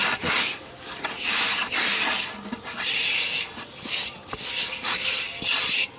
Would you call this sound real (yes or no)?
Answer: yes